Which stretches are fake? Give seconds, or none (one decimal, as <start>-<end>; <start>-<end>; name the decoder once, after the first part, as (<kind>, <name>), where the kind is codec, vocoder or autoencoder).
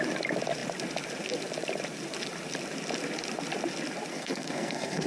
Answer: 4.1-5.1 (codec, SNAC)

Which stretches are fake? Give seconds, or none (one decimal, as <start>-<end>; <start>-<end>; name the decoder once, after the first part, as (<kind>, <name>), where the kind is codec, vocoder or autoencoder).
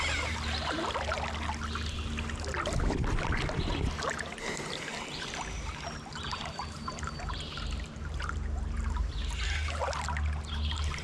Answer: 4.9-9.4 (vocoder, BigVGAN v2)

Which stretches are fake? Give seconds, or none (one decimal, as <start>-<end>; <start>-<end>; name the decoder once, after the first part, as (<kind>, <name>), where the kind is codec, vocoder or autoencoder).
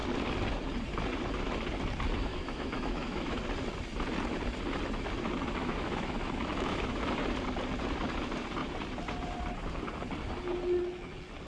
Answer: 2.3-3.4 (autoencoder, DAC-VAE); 5.6-7.1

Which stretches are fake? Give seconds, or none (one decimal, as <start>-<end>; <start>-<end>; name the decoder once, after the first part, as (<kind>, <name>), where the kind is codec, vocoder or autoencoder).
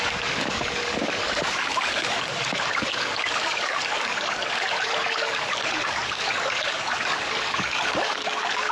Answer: 0.0-8.7 (codec, DAC)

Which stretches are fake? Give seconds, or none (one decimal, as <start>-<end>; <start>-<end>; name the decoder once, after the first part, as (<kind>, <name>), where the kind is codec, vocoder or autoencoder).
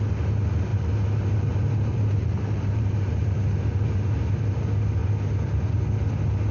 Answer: 0.7-4.4 (vocoder, BigVGAN v2); 5.0-5.7